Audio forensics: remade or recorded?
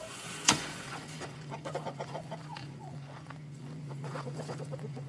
remade